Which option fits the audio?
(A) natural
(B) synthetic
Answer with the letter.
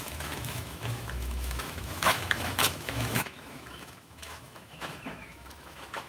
B